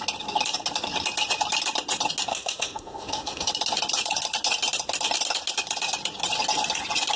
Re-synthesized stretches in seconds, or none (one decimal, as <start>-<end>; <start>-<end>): 2.3-3.5